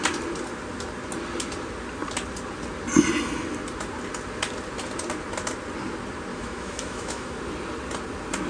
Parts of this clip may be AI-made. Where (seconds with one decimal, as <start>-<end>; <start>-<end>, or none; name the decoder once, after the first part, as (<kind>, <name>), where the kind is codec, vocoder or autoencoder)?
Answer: 6.3-7.4 (autoencoder, DAC-VAE)